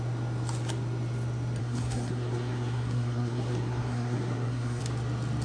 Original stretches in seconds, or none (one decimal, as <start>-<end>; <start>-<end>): 0.0-1.6; 4.8-5.4